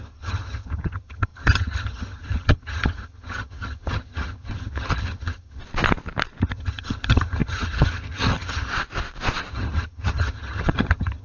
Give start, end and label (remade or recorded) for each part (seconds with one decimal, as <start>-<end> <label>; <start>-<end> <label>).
0.0-5.6 remade; 5.6-6.4 recorded; 6.4-8.7 remade; 8.7-9.5 recorded; 9.5-11.2 remade